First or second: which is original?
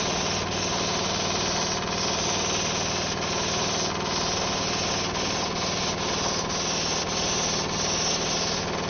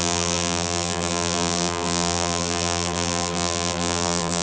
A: first